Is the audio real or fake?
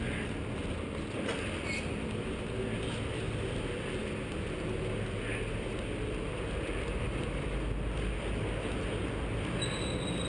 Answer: real